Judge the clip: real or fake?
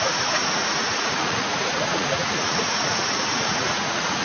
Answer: fake